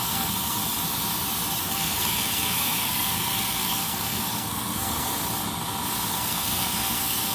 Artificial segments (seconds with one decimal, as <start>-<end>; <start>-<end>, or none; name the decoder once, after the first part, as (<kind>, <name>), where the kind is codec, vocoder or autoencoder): 0.0-0.6 (codec, SNAC); 1.6-5.1; 6.1-7.3